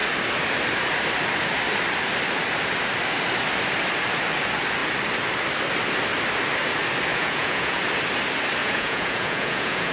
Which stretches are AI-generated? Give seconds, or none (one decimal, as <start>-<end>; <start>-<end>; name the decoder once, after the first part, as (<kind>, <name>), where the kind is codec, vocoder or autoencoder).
7.1-7.8 (vocoder, Vocos); 8.6-9.9